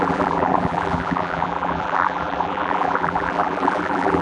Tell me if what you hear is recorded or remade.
remade